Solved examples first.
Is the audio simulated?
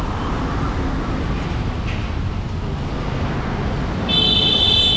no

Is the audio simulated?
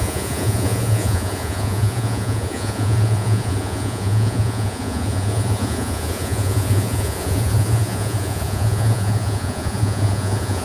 yes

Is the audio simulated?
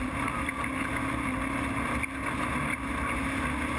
no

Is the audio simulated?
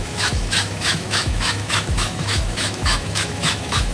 yes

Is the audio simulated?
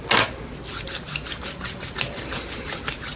no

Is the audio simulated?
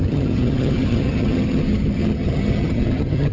yes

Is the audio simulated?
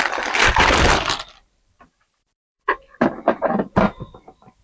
yes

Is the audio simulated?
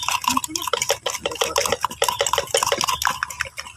no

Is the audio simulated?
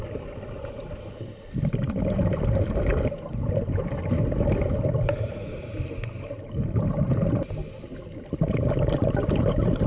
no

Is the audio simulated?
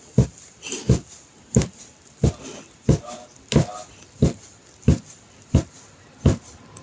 no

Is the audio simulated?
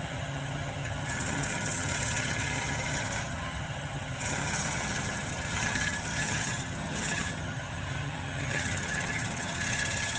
yes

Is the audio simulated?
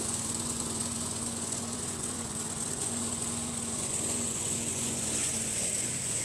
yes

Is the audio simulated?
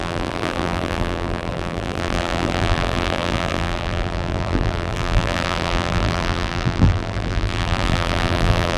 yes